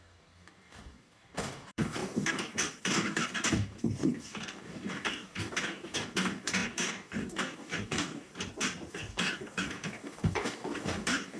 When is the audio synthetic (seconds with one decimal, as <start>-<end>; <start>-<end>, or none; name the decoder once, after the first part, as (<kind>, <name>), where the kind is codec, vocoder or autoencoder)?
0.0-8.3 (codec, DAC); 8.9-11.4